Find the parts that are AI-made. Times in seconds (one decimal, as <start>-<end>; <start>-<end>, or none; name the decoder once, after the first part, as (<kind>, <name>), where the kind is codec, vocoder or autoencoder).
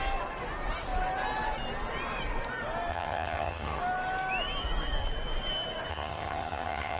2.9-3.8 (vocoder, HiFi-GAN); 5.9-7.0